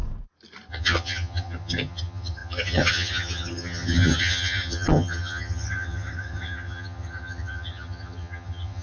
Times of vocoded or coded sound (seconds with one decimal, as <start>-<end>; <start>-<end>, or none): 0.7-8.8